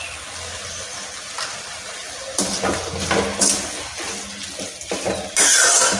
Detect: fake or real real